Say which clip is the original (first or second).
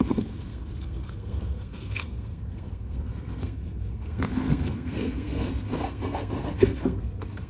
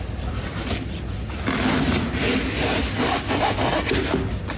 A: second